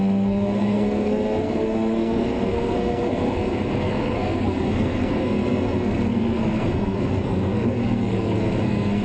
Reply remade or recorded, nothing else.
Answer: remade